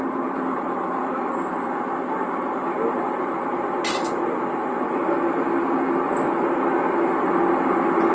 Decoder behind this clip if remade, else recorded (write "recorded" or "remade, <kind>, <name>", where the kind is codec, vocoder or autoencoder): recorded